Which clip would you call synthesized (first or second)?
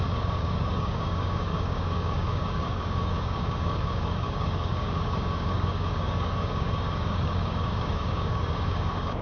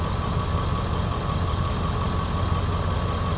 first